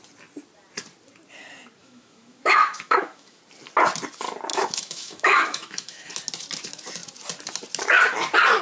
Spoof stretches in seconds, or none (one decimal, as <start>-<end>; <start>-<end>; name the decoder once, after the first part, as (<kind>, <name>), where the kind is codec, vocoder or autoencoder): 1.8-3.4 (autoencoder, DAC-VAE); 4.5-6.1